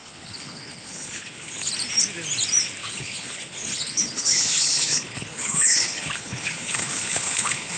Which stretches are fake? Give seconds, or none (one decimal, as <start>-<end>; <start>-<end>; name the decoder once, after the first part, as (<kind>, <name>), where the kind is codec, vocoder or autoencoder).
0.0-1.7 (codec, HILCodec); 2.8-7.8